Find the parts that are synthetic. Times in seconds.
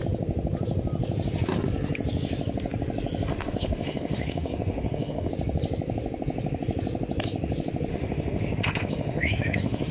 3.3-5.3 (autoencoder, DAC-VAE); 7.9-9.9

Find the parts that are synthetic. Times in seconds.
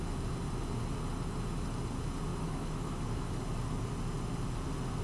2.3-3.4 (autoencoder, DAC-VAE)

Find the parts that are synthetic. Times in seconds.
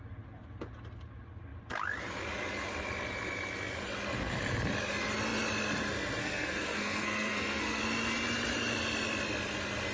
6.2-7.8 (codec, SNAC)